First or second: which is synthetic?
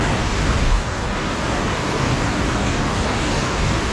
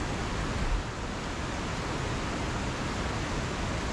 first